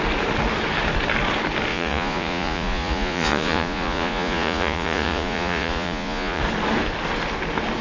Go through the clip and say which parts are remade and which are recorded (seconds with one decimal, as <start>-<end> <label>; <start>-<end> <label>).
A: 0.0-1.7 recorded; 1.7-6.4 remade; 6.4-7.8 recorded